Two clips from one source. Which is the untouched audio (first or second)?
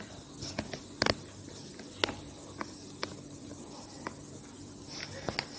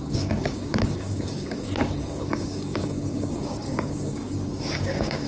first